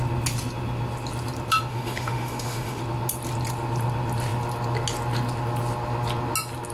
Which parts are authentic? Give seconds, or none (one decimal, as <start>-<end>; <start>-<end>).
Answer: 0.0-1.7; 2.8-6.7